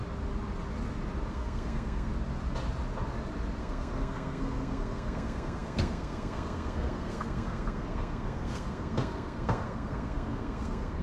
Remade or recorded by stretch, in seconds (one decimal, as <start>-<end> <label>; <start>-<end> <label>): 0.0-1.3 recorded; 1.3-2.1 remade; 2.1-3.6 recorded; 3.6-11.0 remade